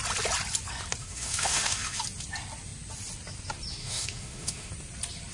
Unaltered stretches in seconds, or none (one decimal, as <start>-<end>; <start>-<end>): 0.0-1.0; 2.0-3.8; 4.7-5.3